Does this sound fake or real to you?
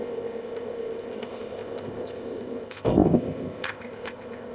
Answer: fake